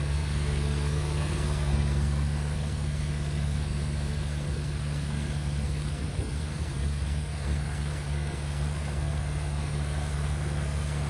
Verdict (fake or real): fake